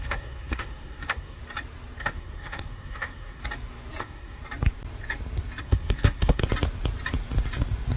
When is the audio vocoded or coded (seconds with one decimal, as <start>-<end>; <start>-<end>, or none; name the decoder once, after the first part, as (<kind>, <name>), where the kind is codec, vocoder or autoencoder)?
0.0-1.4 (codec, SNAC); 2.0-3.4; 4.0-4.4; 5.6-6.4